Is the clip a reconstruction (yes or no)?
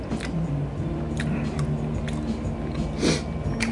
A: no